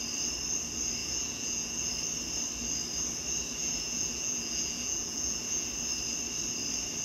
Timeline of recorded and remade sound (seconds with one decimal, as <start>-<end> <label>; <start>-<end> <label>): 0.0-1.0 recorded; 1.0-1.9 remade; 1.9-3.6 recorded; 3.6-5.7 remade; 5.7-7.0 recorded